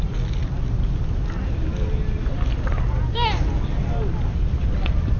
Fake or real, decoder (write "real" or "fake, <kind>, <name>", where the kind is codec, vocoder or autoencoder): real